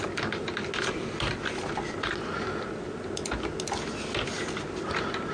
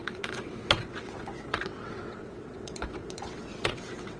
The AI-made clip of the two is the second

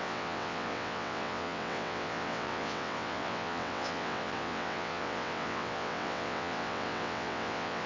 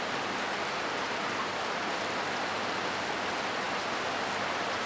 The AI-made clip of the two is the first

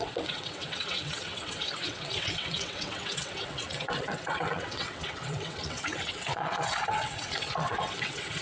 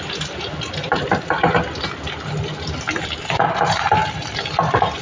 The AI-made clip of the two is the first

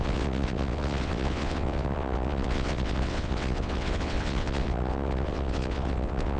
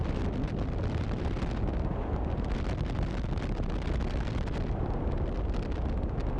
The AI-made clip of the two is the first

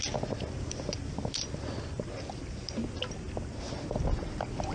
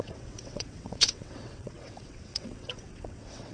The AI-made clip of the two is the second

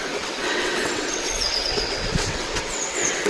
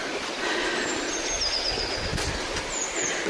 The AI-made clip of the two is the first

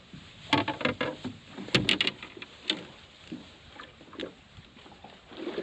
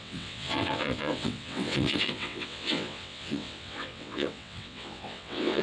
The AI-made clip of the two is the second